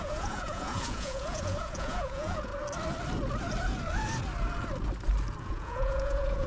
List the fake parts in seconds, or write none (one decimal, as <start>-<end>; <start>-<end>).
0.0-2.5; 5.4-6.5